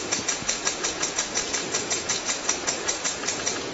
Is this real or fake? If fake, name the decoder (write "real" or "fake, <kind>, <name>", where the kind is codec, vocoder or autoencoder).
fake, vocoder, Vocos